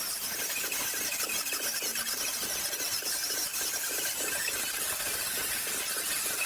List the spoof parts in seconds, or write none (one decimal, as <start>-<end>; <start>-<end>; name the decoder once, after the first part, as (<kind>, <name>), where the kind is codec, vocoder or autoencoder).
3.5-4.4 (vocoder, BigVGAN v2)